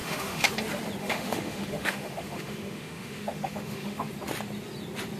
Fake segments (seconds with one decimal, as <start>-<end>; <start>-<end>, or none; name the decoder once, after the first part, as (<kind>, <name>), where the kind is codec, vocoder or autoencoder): 0.0-0.5 (autoencoder, DAC-VAE); 1.0-4.1